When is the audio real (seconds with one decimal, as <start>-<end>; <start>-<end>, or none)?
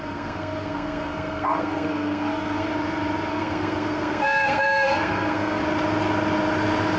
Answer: 2.7-3.3; 5.6-7.0